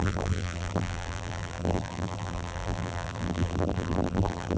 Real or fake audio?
fake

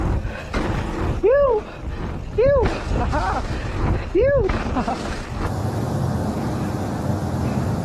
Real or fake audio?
real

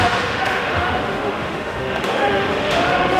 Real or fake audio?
fake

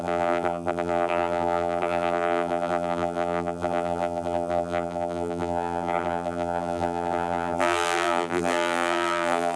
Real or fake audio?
fake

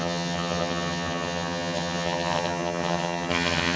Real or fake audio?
fake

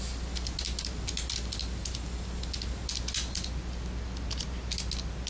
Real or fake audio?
real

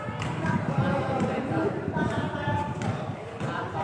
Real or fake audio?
real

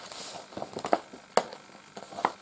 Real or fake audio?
real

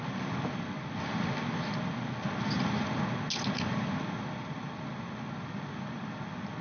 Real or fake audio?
real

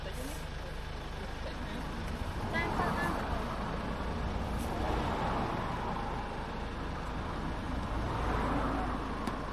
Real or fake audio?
real